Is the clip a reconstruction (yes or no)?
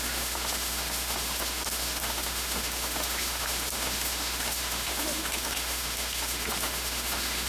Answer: yes